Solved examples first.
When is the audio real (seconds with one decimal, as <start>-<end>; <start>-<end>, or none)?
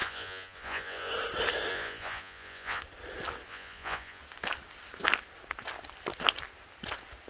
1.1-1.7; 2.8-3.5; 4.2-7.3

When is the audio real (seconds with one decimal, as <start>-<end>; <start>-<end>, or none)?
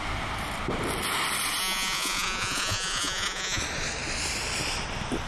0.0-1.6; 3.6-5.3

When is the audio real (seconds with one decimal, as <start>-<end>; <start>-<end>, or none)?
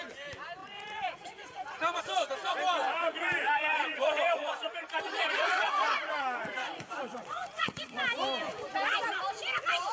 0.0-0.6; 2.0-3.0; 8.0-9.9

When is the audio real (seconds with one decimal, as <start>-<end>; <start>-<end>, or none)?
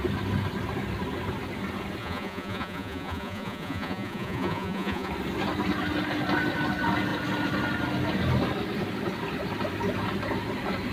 0.0-2.0; 5.1-10.9